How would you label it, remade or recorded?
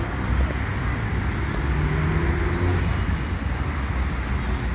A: recorded